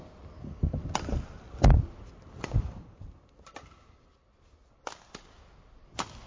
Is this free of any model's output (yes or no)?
yes